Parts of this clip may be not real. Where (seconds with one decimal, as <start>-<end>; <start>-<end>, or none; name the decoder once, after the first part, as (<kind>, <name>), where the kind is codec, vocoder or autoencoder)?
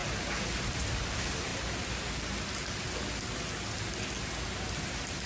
none